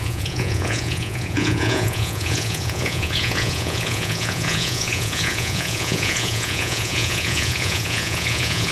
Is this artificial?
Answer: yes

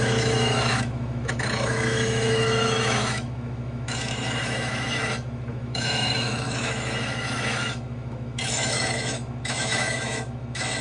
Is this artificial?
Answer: yes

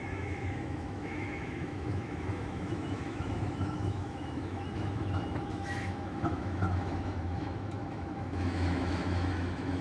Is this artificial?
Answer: yes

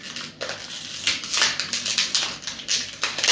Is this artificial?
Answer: no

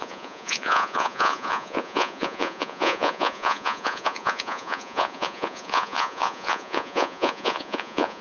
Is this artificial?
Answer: yes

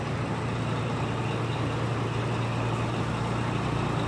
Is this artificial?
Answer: no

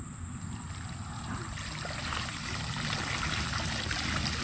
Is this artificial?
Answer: no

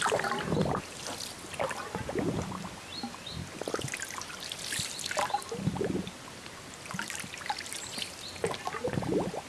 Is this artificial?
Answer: no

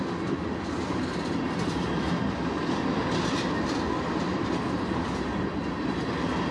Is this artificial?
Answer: no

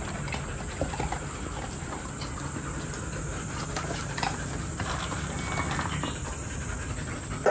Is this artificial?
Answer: no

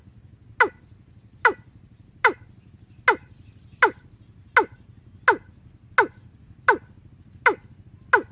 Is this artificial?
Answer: no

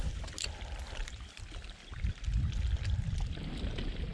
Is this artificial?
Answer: no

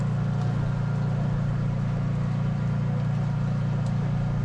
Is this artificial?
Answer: no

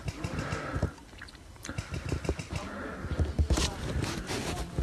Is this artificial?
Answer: no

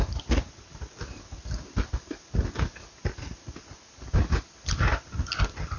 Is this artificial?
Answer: no